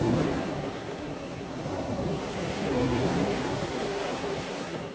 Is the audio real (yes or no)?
no